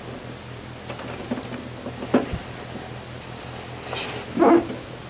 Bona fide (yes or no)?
yes